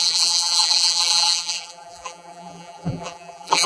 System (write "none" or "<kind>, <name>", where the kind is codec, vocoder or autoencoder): vocoder, BigVGAN v2